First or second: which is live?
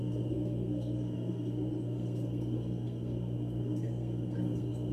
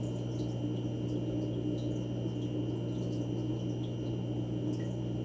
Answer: second